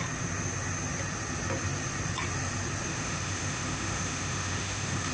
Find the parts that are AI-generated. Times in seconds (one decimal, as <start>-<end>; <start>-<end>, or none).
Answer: 2.9-5.1